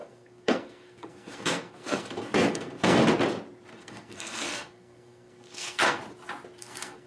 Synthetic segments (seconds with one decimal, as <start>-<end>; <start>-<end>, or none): 0.0-3.0; 3.8-6.0; 6.6-7.1